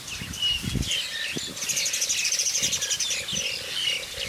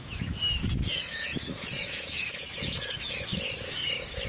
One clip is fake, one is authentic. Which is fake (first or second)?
second